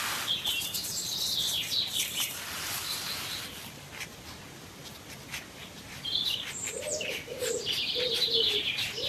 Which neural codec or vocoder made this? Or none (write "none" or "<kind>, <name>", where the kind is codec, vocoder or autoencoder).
none